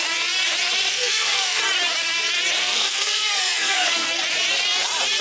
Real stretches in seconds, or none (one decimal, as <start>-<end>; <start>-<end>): 0.0-0.9; 1.6-2.6; 4.2-5.2